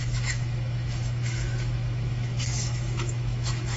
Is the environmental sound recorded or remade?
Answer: remade